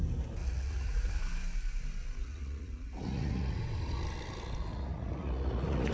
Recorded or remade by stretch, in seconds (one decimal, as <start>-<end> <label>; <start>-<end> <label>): 0.0-0.4 recorded; 0.4-1.2 remade; 1.2-2.2 recorded; 2.2-3.6 remade; 3.6-4.7 recorded; 4.7-5.9 remade